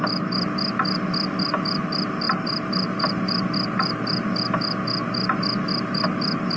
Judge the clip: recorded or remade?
recorded